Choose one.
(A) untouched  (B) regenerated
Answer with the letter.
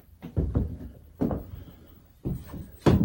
B